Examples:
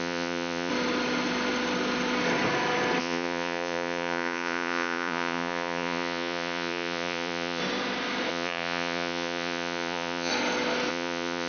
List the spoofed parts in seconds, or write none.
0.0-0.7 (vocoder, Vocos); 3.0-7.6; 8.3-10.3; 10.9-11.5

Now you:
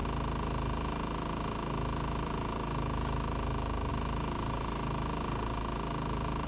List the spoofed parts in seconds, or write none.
none

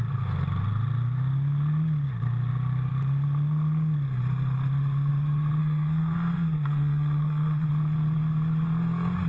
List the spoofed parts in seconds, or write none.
5.6-7.7 (codec, SNAC)